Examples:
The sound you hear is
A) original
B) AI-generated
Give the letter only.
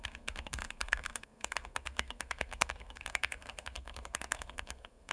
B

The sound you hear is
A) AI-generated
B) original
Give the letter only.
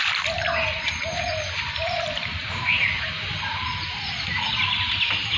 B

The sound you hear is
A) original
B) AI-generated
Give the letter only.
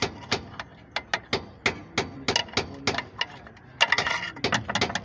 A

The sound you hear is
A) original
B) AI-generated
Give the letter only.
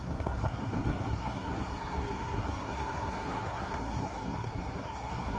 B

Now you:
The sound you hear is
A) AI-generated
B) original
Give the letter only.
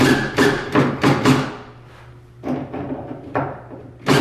B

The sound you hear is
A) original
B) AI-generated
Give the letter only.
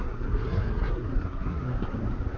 B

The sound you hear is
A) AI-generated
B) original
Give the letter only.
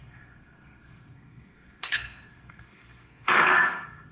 A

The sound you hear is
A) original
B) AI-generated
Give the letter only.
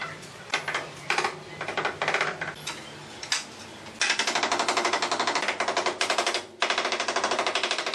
A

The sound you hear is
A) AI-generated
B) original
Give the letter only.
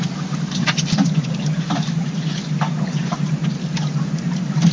B